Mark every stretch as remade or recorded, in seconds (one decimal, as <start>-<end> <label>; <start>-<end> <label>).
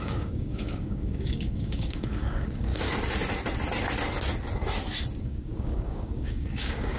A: 0.0-2.7 remade; 2.7-5.2 recorded; 5.2-7.0 remade